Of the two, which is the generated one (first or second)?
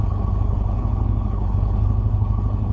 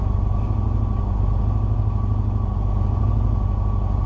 first